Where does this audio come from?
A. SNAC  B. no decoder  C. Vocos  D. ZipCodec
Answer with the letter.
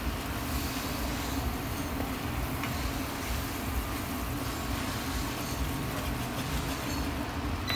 B